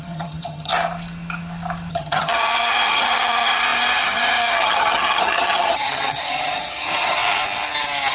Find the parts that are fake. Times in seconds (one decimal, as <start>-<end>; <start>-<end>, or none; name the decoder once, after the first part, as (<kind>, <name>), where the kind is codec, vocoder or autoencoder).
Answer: 0.0-0.7 (vocoder, HiFi-GAN); 1.9-7.2